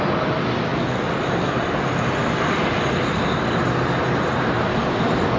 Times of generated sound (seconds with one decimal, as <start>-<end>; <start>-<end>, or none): none